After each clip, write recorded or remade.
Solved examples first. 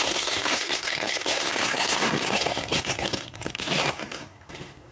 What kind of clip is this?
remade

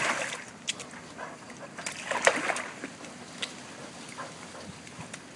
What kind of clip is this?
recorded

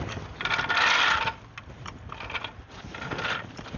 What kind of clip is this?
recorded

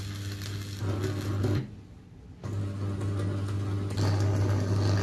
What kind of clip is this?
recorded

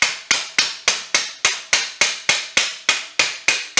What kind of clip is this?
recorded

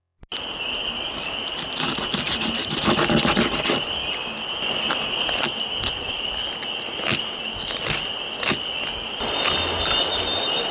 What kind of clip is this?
recorded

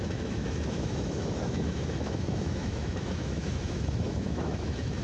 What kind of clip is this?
remade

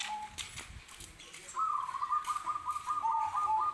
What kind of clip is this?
recorded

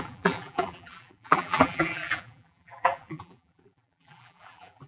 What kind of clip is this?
remade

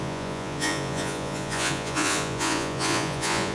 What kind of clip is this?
remade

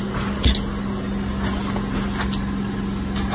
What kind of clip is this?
recorded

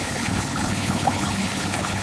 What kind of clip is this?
remade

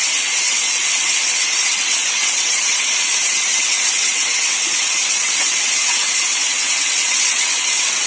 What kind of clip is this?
remade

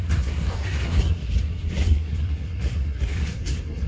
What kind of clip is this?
remade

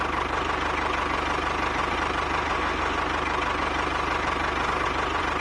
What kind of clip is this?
recorded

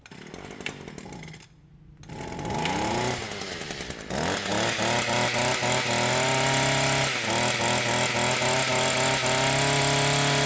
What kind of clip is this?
recorded